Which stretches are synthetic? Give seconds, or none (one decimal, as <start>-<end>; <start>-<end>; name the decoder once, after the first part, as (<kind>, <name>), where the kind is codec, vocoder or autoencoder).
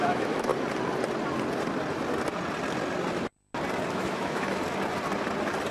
0.0-0.5 (autoencoder, DAC-VAE); 3.9-4.6